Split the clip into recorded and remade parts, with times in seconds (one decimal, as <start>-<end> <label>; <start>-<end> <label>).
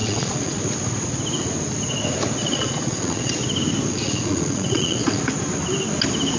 0.0-0.6 remade; 0.6-2.4 recorded; 2.4-3.3 remade; 3.3-3.9 recorded; 3.9-5.2 remade; 5.2-6.4 recorded